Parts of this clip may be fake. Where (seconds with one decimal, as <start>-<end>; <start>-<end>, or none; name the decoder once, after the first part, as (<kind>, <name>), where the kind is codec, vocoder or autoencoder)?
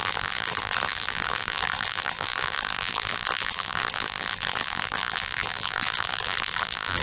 0.0-7.0 (vocoder, BigVGAN v2)